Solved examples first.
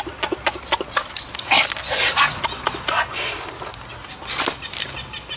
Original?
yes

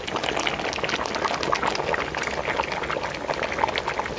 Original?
yes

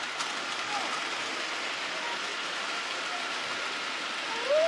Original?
yes